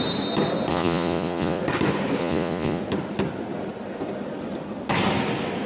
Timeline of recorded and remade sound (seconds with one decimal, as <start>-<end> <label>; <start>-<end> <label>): 0.0-0.7 recorded; 0.7-1.6 remade; 1.6-2.2 recorded; 2.2-2.8 remade; 2.8-5.7 recorded